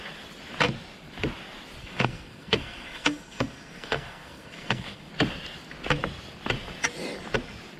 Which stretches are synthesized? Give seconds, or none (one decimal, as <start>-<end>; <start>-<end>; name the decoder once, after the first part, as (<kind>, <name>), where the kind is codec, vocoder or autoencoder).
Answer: 1.8-5.1 (codec, SNAC)